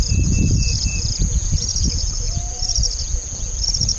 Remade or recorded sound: remade